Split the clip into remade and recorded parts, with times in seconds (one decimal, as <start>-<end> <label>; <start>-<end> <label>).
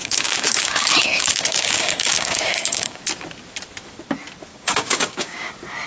0.0-3.0 remade; 3.0-4.5 recorded; 4.5-5.5 remade; 5.5-5.9 recorded